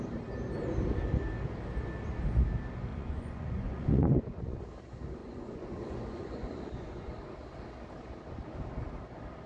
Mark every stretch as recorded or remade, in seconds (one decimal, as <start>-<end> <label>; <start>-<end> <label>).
0.0-2.9 recorded; 2.9-4.6 remade; 4.6-5.2 recorded; 5.2-7.1 remade; 7.1-9.5 recorded